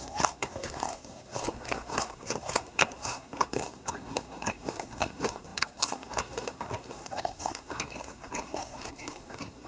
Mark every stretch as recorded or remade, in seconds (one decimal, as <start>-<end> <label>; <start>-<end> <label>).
0.0-9.7 remade